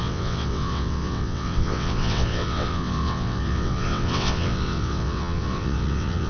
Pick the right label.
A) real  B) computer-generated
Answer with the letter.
B